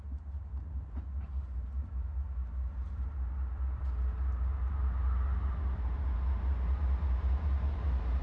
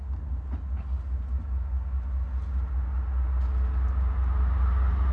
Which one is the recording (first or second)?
second